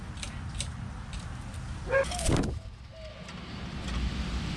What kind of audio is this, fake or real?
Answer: real